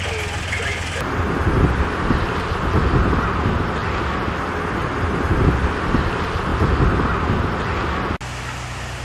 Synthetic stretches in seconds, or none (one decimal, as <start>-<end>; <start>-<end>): 6.5-7.2